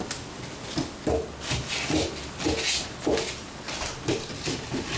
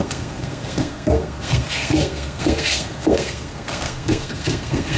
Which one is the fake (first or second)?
second